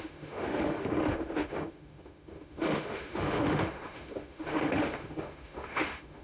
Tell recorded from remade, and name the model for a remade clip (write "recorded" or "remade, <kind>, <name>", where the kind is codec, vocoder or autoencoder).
remade, autoencoder, DAC-VAE